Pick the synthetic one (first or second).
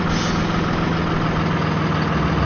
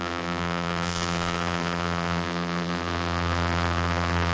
second